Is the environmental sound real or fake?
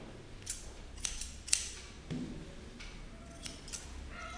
real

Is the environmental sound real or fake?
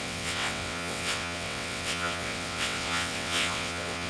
fake